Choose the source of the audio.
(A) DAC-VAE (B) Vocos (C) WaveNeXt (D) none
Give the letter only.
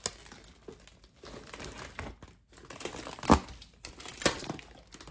D